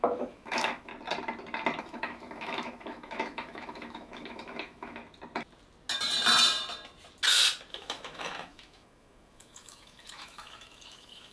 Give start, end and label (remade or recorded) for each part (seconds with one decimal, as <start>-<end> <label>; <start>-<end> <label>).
0.0-0.9 remade; 0.9-1.8 recorded; 1.8-5.0 remade; 5.0-7.7 recorded; 7.7-11.3 remade